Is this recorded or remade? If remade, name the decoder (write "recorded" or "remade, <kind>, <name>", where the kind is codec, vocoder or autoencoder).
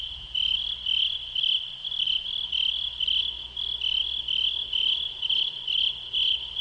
recorded